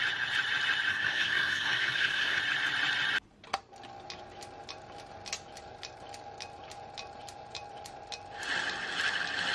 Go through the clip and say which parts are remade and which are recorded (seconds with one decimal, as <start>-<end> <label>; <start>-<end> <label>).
0.0-0.9 recorded; 0.9-2.4 remade; 2.4-9.5 recorded